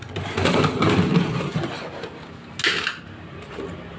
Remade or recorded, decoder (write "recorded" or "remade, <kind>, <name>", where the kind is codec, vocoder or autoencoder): recorded